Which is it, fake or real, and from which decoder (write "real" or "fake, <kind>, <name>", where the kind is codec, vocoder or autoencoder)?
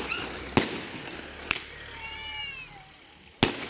real